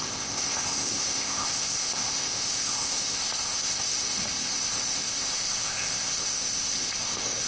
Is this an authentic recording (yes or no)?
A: no